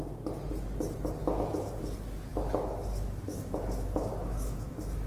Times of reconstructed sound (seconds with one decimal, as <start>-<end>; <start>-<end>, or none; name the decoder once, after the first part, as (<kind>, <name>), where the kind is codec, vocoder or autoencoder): 1.2-1.8 (autoencoder, DAC-VAE); 2.3-5.1